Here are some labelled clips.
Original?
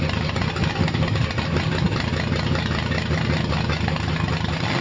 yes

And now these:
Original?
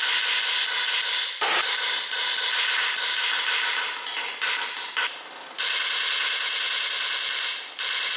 yes